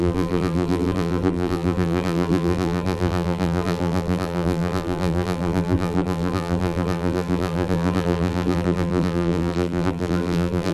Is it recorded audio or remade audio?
remade